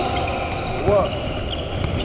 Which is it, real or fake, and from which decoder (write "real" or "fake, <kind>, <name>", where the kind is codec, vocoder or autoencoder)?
real